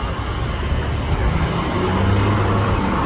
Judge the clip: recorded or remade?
recorded